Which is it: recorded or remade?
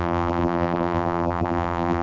remade